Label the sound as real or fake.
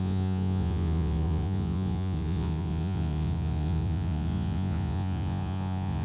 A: fake